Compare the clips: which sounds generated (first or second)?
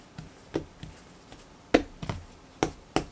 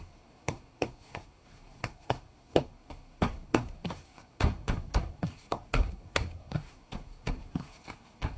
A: second